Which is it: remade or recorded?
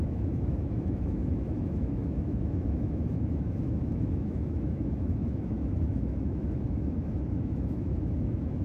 remade